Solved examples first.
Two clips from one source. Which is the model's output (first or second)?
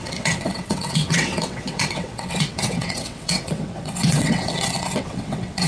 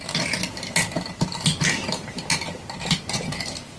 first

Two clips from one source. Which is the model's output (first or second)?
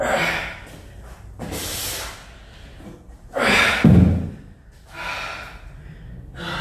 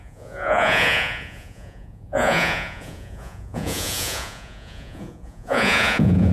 second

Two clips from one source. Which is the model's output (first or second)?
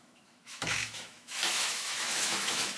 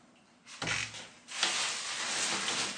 first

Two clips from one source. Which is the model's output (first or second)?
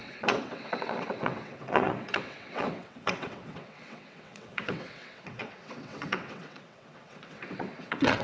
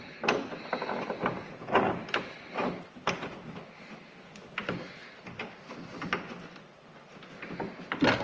first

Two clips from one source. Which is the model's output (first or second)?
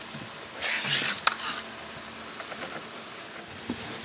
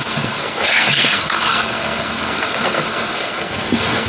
second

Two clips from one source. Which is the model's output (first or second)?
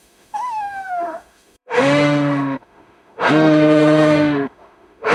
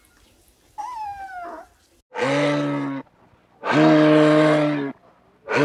first